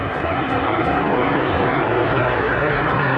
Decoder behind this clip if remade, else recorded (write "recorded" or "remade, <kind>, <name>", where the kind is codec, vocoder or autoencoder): remade, codec, SNAC